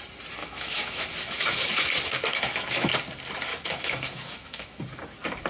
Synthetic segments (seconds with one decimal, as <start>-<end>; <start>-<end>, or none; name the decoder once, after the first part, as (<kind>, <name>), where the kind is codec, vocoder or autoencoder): 0.4-1.9 (autoencoder, DAC-VAE); 2.3-2.9; 3.5-4.8